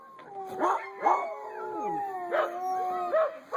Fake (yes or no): no